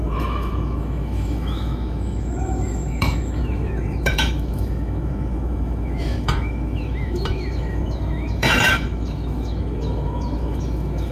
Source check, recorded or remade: remade